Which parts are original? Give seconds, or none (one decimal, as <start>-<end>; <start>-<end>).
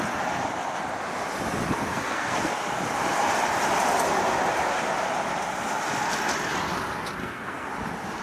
0.0-1.9; 2.5-7.2; 7.7-8.2